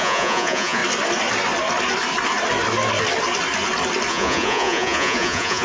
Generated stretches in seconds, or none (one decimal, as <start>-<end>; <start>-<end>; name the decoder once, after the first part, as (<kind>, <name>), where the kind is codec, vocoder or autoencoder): 0.0-0.8 (vocoder, Vocos); 4.1-5.6